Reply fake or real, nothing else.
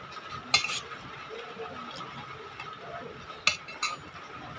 real